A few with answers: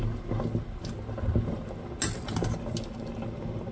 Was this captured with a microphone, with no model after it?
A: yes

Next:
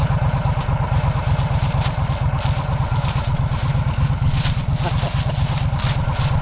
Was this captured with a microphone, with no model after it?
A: yes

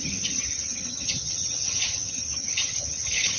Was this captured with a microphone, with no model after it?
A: no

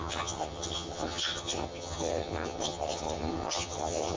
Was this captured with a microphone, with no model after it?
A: no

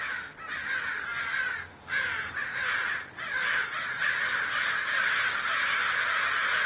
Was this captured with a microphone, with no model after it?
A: yes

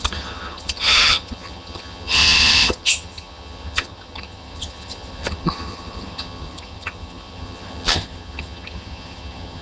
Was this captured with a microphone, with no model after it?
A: no